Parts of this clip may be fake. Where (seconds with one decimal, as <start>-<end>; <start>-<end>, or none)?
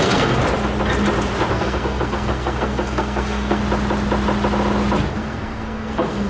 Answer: 0.0-0.4; 1.5-3.6; 5.1-6.3